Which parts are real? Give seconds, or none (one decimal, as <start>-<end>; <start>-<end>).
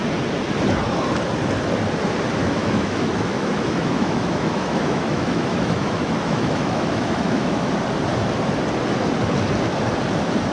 0.0-2.4; 7.7-10.5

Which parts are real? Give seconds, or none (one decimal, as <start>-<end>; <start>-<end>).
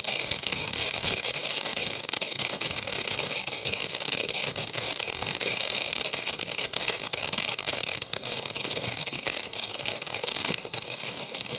none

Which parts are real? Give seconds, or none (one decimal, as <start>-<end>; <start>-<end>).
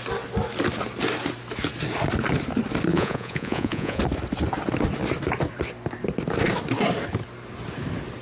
0.0-2.9; 4.0-8.2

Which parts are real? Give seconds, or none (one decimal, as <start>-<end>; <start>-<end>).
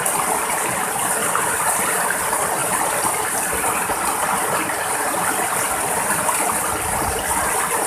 0.0-7.9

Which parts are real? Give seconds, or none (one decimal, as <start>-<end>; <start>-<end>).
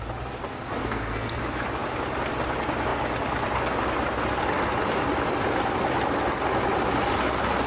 0.0-0.8; 1.4-7.7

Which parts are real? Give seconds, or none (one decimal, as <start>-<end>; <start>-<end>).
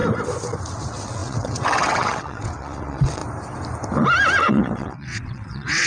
0.0-0.7; 3.2-4.4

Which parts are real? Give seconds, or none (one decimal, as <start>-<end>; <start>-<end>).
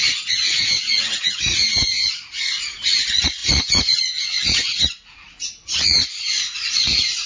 0.0-0.5